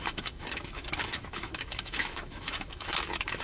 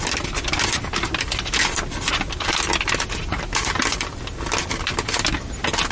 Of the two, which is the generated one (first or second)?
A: first